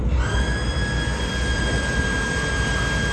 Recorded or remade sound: recorded